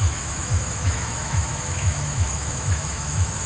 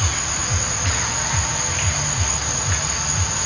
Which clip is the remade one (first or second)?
first